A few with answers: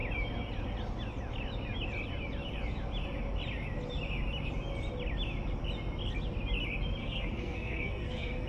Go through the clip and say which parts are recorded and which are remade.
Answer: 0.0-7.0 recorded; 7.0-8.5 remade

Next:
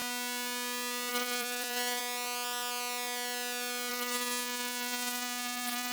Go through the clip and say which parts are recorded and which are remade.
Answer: 0.0-1.1 recorded; 1.1-2.0 remade; 2.0-3.9 recorded; 3.9-5.9 remade

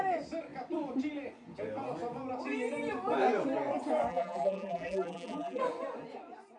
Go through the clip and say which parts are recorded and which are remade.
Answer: 0.0-4.1 recorded; 4.1-5.6 remade; 5.6-6.6 recorded

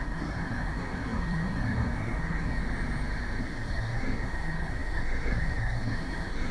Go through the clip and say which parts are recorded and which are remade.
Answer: 0.0-2.6 remade; 2.6-3.4 recorded; 3.4-6.5 remade

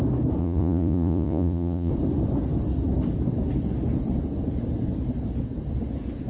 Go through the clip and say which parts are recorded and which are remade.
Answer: 0.0-0.4 recorded; 0.4-1.9 remade; 1.9-6.3 recorded